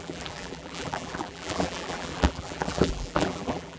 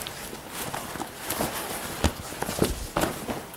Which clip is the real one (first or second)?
second